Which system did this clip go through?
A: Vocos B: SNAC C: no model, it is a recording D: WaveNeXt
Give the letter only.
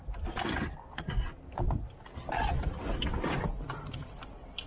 C